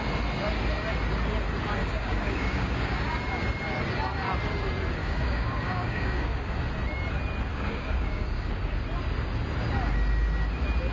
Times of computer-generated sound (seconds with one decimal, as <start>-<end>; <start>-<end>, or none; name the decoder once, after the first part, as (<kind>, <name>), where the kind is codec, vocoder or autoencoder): 1.8-3.0 (codec, DAC); 5.0-6.6; 7.5-8.5